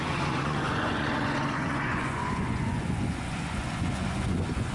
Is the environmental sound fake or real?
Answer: fake